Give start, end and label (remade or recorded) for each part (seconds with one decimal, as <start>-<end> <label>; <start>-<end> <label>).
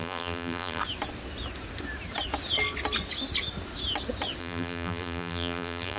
0.0-0.8 remade; 0.8-4.4 recorded; 4.4-6.0 remade